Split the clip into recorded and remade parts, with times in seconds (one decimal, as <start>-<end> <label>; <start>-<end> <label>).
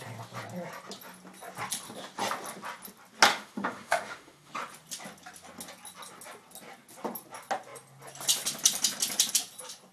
0.0-3.3 recorded; 3.3-4.5 remade; 4.5-9.9 recorded